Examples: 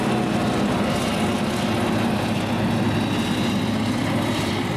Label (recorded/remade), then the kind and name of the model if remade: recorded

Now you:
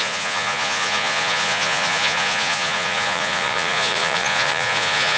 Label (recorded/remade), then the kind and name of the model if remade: remade, vocoder, Vocos